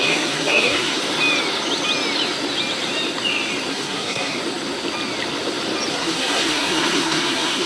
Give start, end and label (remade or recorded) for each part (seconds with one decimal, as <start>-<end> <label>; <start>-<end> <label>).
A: 0.0-1.0 remade; 1.0-3.7 recorded; 3.7-4.4 remade; 4.4-5.9 recorded; 5.9-7.7 remade